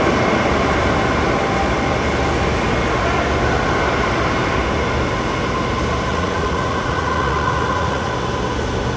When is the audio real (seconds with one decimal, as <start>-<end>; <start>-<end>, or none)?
0.0-6.1; 8.1-9.0